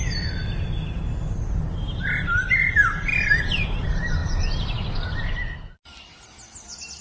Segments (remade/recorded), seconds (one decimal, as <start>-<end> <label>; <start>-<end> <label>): 0.0-3.1 recorded; 3.1-3.7 remade; 3.7-4.2 recorded; 4.2-4.9 remade; 4.9-7.0 recorded